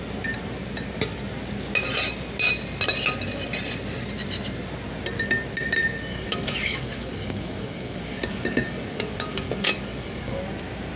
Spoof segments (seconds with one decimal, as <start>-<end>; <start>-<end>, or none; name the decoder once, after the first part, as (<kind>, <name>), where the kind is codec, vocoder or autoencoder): 6.1-10.4 (codec, DAC)